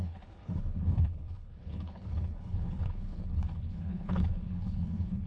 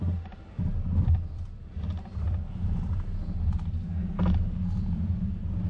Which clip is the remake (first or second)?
first